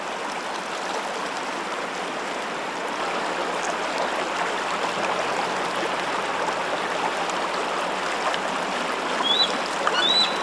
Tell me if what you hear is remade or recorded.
recorded